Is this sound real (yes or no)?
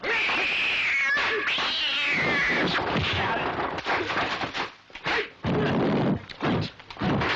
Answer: yes